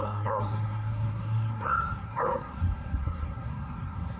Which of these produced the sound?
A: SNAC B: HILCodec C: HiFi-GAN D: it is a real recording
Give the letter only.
A